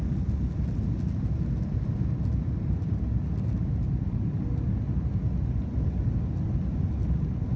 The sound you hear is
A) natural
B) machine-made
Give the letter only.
A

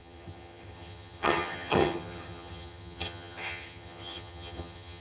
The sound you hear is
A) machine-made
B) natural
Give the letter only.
A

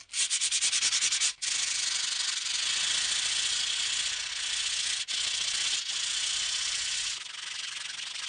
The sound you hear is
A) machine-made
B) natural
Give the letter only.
B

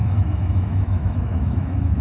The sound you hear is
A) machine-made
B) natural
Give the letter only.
A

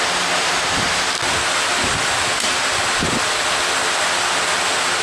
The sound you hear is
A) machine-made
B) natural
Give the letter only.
B